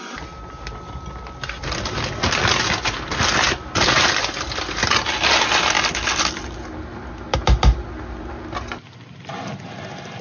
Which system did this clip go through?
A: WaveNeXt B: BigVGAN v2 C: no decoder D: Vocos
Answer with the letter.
C